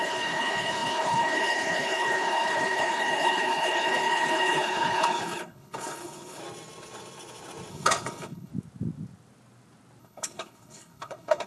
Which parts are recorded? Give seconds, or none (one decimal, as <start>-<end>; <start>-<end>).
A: 6.4-7.7; 8.5-10.0